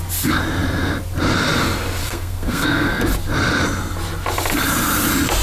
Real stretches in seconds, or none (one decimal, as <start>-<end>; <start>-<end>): 0.0-2.0; 3.0-5.4